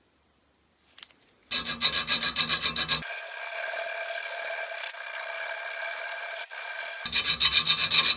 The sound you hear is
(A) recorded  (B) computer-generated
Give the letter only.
A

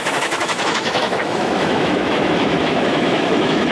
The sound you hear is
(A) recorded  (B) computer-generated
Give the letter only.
B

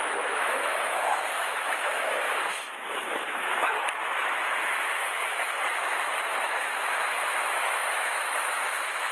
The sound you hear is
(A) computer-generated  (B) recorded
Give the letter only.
A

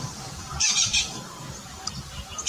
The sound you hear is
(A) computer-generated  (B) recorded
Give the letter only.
B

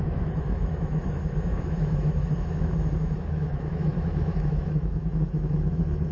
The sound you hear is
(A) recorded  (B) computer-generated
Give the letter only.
B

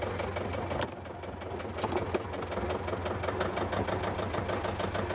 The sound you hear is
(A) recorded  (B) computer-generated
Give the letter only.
A